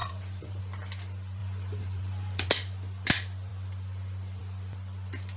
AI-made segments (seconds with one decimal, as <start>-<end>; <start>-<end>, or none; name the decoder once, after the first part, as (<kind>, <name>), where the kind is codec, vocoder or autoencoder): 0.0-0.6 (vocoder, BigVGAN v2); 1.4-2.5